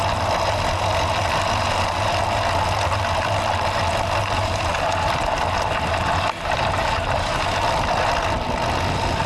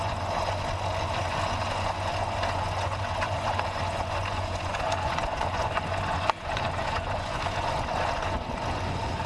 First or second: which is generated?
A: second